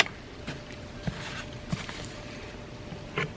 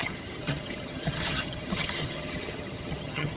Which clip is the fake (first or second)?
second